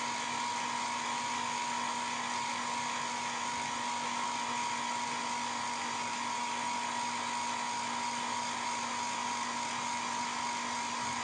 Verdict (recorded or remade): recorded